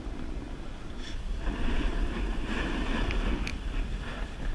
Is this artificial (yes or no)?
no